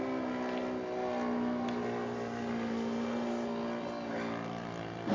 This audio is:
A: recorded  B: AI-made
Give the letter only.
A